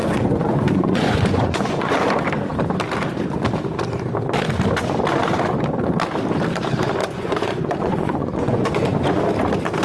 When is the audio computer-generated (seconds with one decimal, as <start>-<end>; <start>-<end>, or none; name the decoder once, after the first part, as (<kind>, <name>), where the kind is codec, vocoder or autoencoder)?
0.0-1.9 (vocoder, Vocos); 7.0-9.2